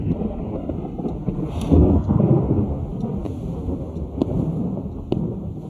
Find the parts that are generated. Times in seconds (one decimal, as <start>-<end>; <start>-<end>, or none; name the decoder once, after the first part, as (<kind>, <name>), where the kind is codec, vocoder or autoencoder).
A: 1.7-2.2 (codec, SNAC)

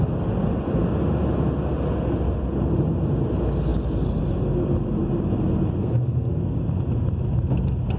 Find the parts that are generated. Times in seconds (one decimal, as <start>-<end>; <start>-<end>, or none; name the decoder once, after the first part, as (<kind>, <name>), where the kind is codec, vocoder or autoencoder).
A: 5.8-6.4 (codec, SNAC)

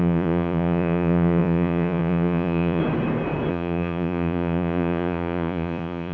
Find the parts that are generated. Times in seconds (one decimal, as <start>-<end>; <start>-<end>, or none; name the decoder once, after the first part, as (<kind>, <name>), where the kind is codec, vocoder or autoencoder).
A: 0.0-2.8 (vocoder, Vocos); 3.5-6.1

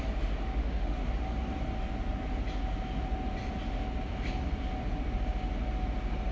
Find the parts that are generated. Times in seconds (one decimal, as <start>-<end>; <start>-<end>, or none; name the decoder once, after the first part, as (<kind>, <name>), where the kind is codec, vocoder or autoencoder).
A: 0.6-1.1 (autoencoder, DAC-VAE)